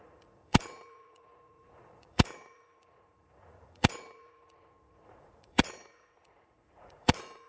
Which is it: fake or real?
fake